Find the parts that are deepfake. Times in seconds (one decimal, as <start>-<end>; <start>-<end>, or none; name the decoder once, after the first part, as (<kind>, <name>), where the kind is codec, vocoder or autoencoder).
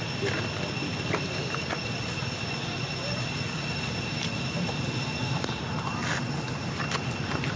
none